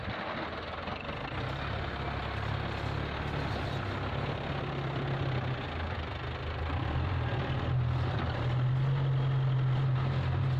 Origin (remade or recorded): recorded